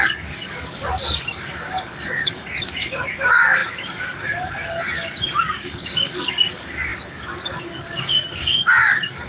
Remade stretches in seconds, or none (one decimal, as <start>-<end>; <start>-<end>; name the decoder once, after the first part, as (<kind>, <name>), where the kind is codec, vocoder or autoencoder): 0.0-9.3 (codec, DAC)